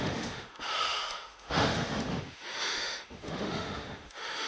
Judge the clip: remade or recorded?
remade